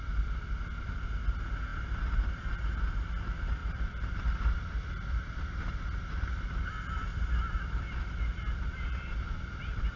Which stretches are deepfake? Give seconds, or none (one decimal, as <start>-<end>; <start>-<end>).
3.6-5.8; 7.1-10.0

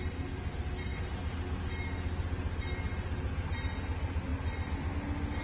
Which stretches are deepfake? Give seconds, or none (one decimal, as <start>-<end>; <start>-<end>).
none

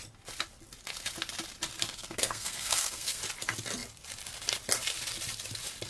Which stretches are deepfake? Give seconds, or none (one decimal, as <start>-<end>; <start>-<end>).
1.9-3.2

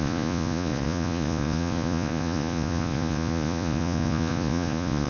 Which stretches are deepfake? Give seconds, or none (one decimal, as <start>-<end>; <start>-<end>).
0.0-5.1

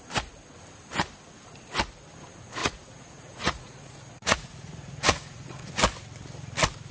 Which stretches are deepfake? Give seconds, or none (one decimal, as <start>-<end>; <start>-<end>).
2.6-5.7

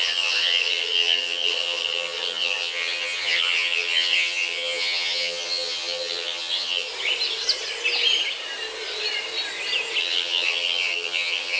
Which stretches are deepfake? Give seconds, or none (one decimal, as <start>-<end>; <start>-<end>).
0.0-6.9; 10.0-11.6

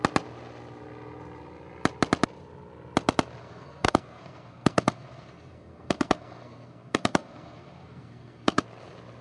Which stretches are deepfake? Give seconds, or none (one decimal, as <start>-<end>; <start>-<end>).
3.4-8.6